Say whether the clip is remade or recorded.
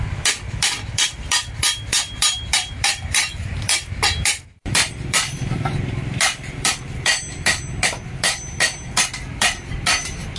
remade